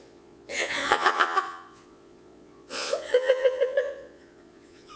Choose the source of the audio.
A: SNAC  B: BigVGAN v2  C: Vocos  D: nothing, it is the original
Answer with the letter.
C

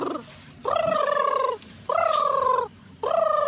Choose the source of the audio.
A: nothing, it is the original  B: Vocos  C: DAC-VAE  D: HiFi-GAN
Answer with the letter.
A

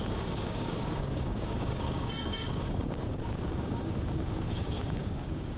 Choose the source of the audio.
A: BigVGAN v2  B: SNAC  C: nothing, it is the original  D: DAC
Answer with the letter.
D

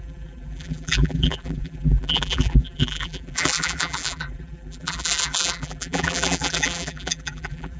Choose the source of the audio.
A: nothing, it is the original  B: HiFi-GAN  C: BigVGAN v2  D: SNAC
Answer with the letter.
C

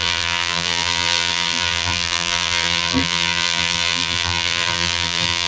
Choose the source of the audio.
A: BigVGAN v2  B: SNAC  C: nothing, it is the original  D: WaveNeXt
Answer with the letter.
A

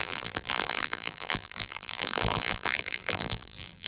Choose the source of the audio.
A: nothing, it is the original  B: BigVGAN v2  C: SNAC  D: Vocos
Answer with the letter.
B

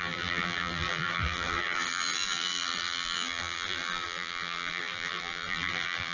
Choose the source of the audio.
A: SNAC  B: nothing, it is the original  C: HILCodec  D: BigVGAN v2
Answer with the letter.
D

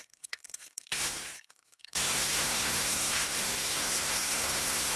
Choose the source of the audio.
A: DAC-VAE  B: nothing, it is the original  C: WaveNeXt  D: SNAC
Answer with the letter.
D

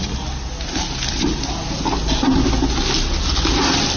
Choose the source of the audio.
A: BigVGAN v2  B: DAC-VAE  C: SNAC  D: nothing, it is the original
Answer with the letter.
D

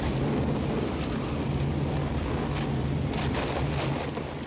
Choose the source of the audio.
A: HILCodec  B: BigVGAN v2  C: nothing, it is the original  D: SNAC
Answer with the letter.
C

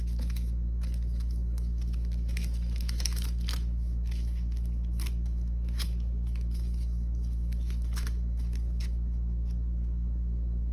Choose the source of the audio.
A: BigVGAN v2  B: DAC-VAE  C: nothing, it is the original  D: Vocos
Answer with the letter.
B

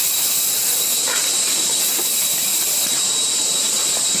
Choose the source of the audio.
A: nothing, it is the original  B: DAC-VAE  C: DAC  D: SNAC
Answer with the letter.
A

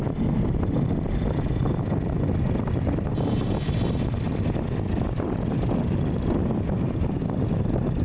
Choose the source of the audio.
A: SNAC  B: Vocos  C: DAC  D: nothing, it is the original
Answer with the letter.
D